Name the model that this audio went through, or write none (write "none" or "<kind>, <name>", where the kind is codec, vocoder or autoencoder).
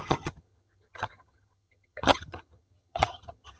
vocoder, HiFi-GAN